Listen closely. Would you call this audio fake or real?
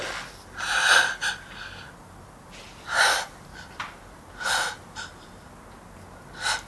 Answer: real